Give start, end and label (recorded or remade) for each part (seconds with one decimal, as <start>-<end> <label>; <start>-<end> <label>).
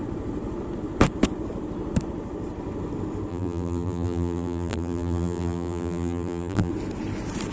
0.0-3.3 recorded; 3.3-6.7 remade; 6.7-7.5 recorded